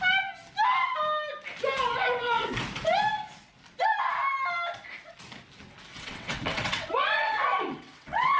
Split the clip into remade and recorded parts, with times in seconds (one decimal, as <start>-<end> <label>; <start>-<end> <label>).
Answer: 0.0-1.9 recorded; 1.9-2.5 remade; 2.5-5.9 recorded; 5.9-8.4 remade